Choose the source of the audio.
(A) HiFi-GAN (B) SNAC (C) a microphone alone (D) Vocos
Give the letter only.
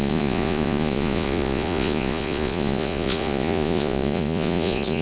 D